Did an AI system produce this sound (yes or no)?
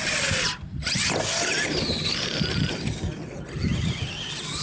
no